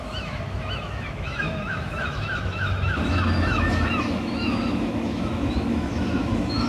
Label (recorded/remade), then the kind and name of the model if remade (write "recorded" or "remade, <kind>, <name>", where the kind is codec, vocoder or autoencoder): remade, autoencoder, DAC-VAE